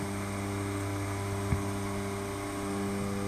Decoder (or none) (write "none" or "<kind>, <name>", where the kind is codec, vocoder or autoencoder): none